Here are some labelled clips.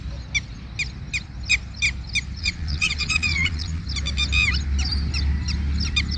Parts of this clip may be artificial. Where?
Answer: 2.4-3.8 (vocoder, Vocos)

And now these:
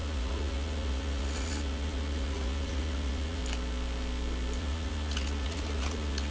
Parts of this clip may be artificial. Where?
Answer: 0.0-3.4 (vocoder, Vocos); 4.6-6.3

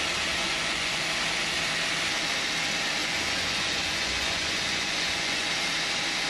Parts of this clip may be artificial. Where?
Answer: 0.4-1.0 (vocoder, Vocos); 3.0-5.5

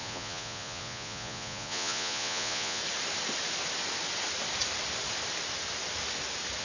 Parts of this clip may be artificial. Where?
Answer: 0.0-2.8 (vocoder, Vocos)

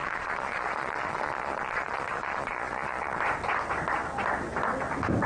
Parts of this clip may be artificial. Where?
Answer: 0.0-3.2 (vocoder, Vocos)

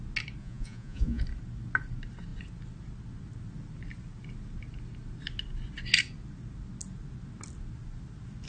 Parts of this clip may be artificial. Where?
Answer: 0.4-1.2 (vocoder, Vocos)

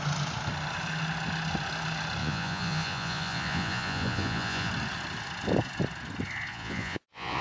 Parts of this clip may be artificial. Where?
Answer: 2.2-4.7 (vocoder, Vocos); 6.5-7.4

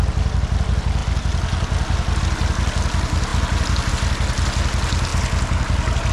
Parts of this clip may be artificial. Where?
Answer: none